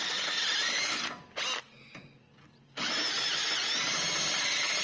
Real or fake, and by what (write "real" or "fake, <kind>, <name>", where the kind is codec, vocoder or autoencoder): real